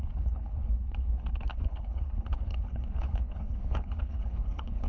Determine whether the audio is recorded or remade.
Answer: remade